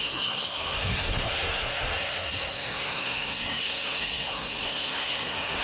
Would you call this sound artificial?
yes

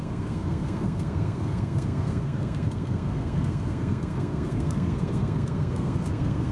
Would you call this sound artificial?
yes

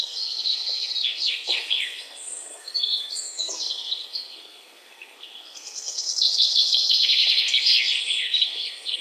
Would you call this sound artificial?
yes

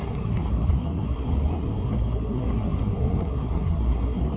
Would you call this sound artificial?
yes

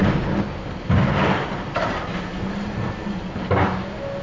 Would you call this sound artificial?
no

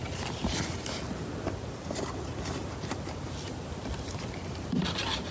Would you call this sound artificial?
no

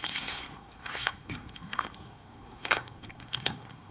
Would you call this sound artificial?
yes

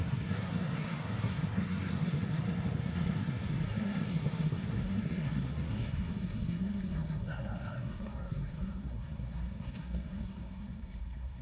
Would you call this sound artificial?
yes